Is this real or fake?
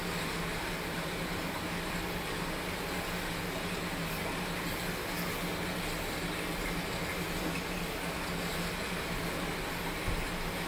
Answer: real